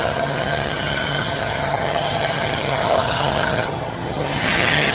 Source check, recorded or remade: remade